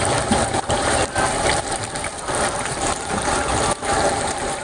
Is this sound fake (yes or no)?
yes